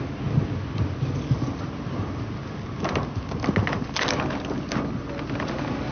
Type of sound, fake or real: real